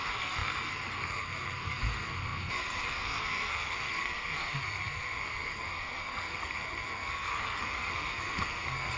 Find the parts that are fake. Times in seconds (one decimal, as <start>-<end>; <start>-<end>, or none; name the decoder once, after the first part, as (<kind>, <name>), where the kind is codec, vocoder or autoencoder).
0.0-9.0 (codec, SNAC)

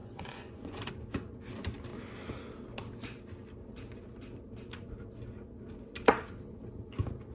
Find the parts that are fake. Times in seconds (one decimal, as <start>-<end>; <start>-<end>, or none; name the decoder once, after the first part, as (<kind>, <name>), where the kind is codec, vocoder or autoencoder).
0.0-0.9 (vocoder, Vocos)